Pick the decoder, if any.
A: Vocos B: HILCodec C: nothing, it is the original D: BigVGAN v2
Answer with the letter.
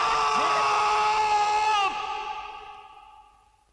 C